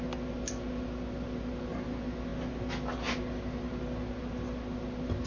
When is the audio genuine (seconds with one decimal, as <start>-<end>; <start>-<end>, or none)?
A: 0.0-5.3